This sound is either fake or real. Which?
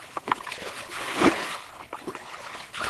fake